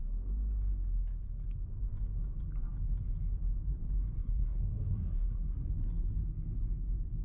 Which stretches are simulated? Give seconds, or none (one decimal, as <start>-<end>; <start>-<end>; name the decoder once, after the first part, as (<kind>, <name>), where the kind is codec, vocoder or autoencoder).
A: 4.2-5.7 (codec, SNAC)